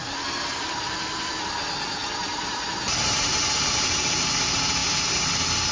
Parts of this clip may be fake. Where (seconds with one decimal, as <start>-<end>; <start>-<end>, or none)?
2.0-3.6